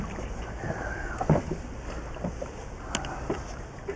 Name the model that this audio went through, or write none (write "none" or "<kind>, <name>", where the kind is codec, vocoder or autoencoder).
none